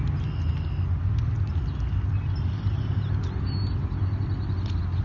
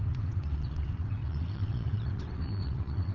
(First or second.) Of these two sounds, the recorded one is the first